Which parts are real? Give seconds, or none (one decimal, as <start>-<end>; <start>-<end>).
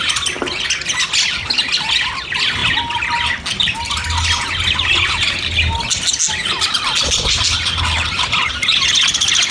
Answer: 0.0-9.5